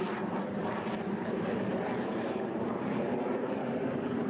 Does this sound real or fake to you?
fake